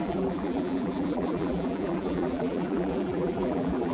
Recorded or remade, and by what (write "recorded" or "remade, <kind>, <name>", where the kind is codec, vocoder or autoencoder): remade, vocoder, BigVGAN v2